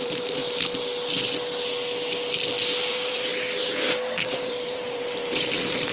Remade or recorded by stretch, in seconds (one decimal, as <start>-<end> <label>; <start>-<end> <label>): 0.0-0.4 remade; 0.4-2.9 recorded; 2.9-3.3 remade; 3.3-4.3 recorded; 4.3-5.9 remade